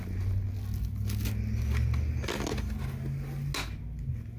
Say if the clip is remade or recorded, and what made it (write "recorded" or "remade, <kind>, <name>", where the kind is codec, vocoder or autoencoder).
recorded